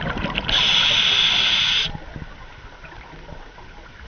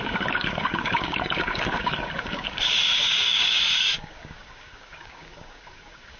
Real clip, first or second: first